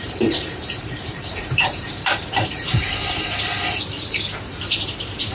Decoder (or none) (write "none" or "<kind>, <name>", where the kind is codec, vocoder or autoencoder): vocoder, BigVGAN v2